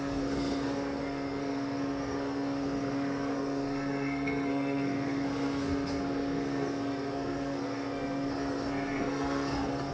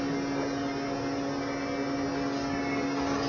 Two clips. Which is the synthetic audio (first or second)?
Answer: first